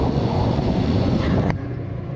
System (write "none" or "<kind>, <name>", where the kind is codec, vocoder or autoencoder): vocoder, Vocos